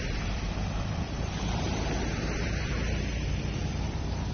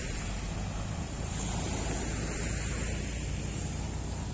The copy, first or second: first